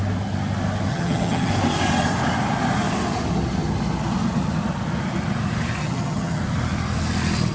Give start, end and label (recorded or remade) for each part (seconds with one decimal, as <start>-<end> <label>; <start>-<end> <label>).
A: 0.0-0.9 recorded; 0.9-1.5 remade; 1.5-5.8 recorded; 5.8-6.4 remade; 6.4-7.5 recorded